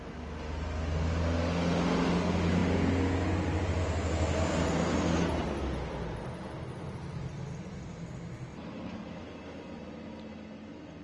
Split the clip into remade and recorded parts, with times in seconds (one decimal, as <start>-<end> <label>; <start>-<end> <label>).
0.0-8.5 recorded; 8.5-9.2 remade; 9.2-11.0 recorded